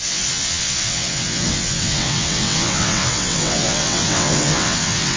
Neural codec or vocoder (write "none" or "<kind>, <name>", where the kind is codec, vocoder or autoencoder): vocoder, WaveNeXt